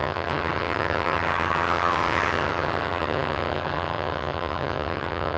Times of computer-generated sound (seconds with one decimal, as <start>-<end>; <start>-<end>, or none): 0.0-5.4